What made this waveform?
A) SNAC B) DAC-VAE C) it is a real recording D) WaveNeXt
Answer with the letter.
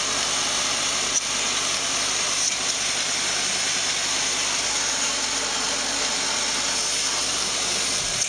C